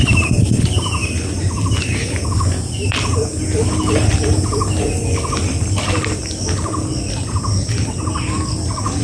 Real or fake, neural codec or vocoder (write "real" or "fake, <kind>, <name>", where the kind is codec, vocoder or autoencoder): real